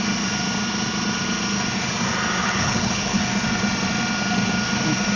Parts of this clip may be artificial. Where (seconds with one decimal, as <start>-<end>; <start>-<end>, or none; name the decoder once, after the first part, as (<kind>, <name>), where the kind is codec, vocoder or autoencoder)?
2.4-3.2 (codec, HILCodec)